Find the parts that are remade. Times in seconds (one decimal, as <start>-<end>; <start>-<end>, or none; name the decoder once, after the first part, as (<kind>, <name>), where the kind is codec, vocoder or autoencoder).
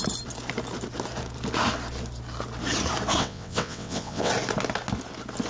3.2-4.3 (vocoder, WaveNeXt)